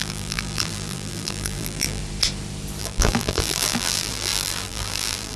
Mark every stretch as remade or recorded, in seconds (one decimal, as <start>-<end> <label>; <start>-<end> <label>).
0.0-2.0 remade; 2.0-2.8 recorded; 2.8-5.4 remade